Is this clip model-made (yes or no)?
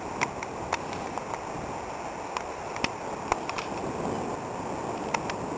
no